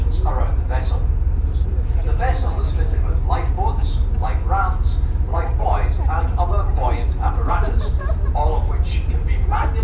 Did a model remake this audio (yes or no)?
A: no